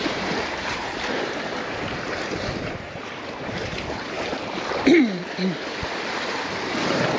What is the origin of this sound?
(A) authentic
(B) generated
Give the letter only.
B